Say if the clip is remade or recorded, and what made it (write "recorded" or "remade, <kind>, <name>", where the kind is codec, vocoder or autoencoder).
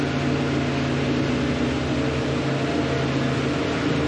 recorded